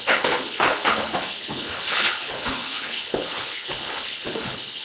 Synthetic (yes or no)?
yes